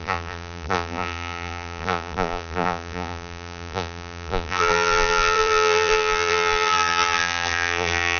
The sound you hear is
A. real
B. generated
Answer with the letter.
B